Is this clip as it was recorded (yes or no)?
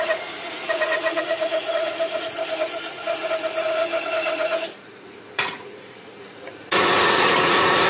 no